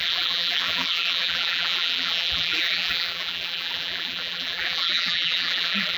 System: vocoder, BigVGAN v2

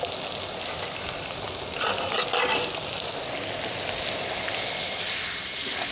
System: none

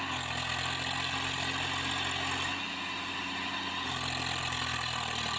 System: none